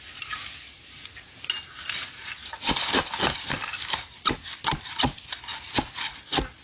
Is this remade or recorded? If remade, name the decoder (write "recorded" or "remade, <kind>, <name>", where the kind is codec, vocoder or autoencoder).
recorded